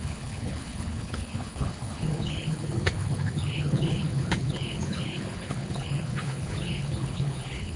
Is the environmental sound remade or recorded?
remade